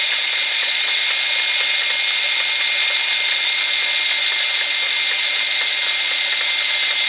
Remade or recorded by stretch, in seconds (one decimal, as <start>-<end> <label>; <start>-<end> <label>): 0.0-0.9 remade; 0.9-7.1 recorded